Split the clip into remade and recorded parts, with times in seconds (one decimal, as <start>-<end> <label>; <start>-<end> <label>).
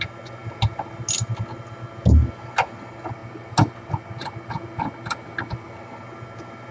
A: 0.0-6.7 recorded